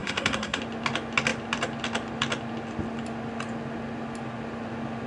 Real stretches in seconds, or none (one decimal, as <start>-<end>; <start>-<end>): 0.6-5.1